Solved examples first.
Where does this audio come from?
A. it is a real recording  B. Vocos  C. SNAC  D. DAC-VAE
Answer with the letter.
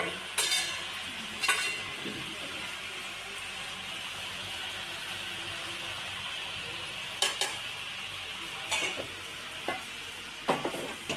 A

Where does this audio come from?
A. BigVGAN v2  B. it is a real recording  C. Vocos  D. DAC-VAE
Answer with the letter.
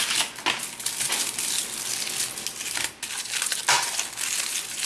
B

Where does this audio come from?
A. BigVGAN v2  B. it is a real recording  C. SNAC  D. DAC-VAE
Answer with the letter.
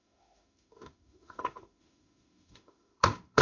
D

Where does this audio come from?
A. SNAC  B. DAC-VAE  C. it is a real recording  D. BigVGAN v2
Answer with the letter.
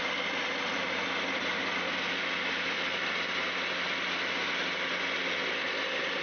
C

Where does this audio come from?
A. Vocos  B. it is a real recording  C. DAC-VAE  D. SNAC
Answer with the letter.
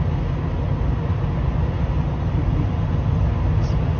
B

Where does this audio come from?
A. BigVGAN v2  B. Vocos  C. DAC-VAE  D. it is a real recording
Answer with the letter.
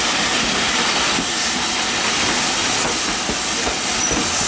D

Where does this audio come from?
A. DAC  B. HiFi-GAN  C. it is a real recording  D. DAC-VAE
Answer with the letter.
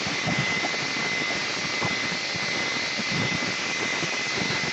C